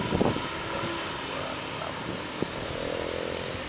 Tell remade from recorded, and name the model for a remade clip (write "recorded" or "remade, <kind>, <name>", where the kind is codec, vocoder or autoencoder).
recorded